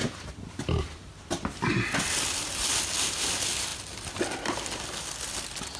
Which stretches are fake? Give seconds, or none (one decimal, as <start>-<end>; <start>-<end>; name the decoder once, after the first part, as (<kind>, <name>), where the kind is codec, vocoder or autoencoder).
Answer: 0.0-0.5 (vocoder, BigVGAN v2); 3.7-4.8